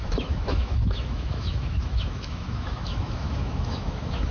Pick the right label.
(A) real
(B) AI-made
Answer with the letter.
B